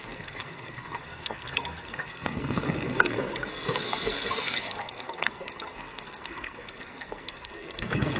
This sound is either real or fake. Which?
fake